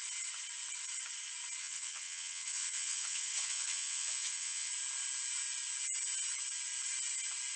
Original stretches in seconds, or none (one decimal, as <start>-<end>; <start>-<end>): 0.0-1.6; 4.7-7.6